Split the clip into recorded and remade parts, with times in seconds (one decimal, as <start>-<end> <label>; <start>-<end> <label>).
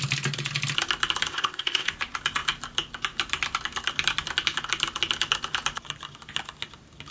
0.0-1.3 recorded; 1.3-1.9 remade; 1.9-7.1 recorded